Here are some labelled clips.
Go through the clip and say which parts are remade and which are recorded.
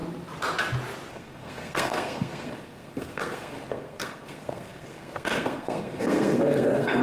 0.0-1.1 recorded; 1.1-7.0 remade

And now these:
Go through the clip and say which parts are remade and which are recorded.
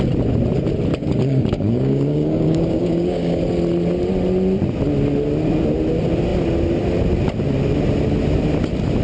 0.0-0.9 recorded; 0.9-3.4 remade; 3.4-9.0 recorded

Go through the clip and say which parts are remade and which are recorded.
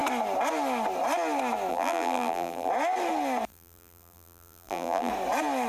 0.0-1.7 recorded; 1.7-2.7 remade; 2.7-3.5 recorded; 3.5-5.1 remade; 5.1-5.7 recorded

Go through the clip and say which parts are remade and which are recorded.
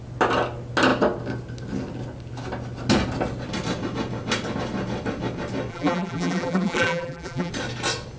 0.0-5.7 recorded; 5.7-7.5 remade; 7.5-8.2 recorded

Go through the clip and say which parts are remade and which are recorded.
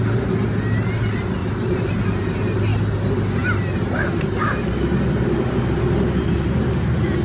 0.0-7.2 recorded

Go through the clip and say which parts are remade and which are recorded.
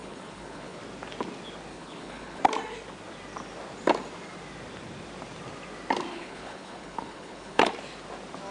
0.0-0.8 remade; 0.8-1.7 recorded; 1.7-2.4 remade; 2.4-6.1 recorded; 6.1-7.7 remade; 7.7-8.5 recorded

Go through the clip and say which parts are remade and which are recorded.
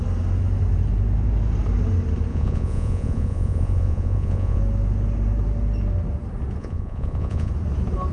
0.0-2.3 recorded; 2.3-4.6 remade; 4.6-6.6 recorded; 6.6-7.5 remade; 7.5-8.1 recorded